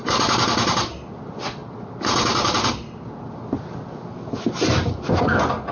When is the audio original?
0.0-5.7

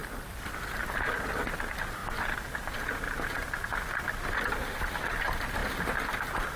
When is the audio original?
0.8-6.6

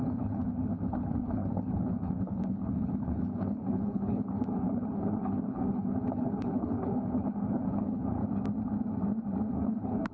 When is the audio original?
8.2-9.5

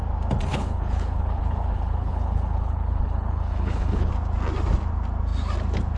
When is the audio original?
0.0-0.5; 4.1-6.0

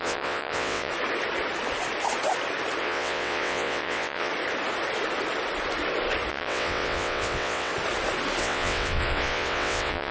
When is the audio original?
0.9-2.8; 4.3-6.3; 7.7-8.4

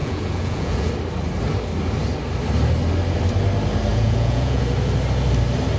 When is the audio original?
0.9-3.9; 4.6-5.8

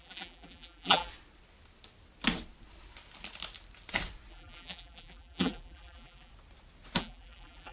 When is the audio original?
1.1-4.3; 6.3-7.0

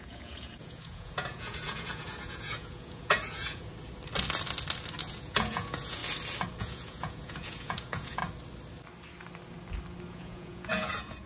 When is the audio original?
3.7-5.0; 6.0-6.6; 8.2-10.1